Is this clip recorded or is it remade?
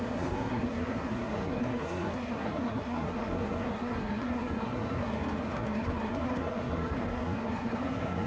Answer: remade